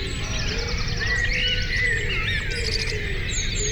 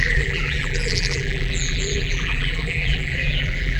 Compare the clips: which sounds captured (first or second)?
first